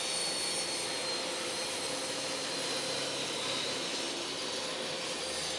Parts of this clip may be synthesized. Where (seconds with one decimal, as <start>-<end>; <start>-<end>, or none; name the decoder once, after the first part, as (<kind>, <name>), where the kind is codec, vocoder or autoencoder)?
1.0-4.3 (vocoder, BigVGAN v2)